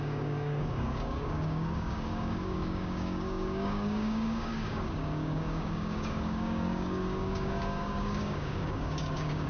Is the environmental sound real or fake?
fake